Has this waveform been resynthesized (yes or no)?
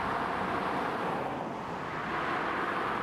no